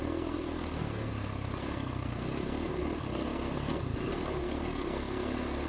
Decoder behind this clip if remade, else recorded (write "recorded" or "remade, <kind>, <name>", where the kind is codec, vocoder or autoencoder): remade, codec, SNAC